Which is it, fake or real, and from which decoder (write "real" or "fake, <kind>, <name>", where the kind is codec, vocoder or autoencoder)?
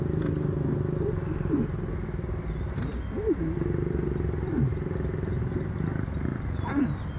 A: real